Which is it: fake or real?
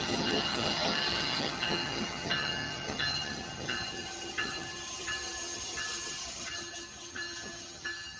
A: fake